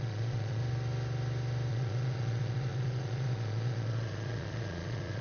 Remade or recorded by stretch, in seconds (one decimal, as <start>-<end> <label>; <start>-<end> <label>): 0.0-0.6 remade; 0.6-1.7 recorded; 1.7-5.2 remade